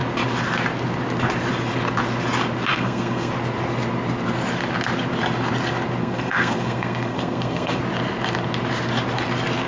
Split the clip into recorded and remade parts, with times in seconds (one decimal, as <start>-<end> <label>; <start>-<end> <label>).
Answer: 0.0-2.7 recorded; 2.7-3.3 remade; 3.3-6.0 recorded; 6.0-7.8 remade; 7.8-9.7 recorded